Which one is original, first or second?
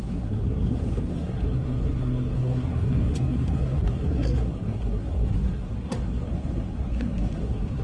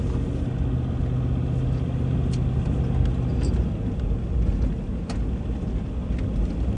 second